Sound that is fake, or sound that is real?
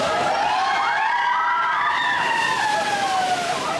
real